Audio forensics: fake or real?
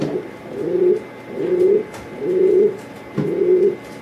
real